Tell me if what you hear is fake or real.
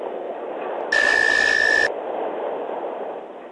real